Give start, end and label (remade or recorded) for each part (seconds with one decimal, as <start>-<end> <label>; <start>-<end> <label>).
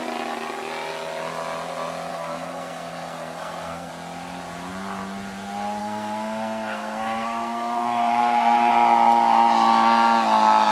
0.0-2.1 recorded; 2.1-3.9 remade; 3.9-5.8 recorded; 5.8-8.7 remade; 8.7-10.7 recorded